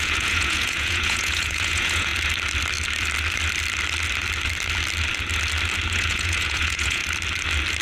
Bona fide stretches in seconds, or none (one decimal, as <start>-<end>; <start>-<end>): 2.1-5.9; 7.0-7.8